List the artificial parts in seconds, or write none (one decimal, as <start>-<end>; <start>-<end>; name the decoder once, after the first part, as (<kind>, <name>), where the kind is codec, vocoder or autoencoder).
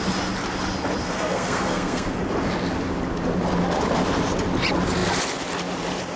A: 1.0-2.2 (codec, SNAC)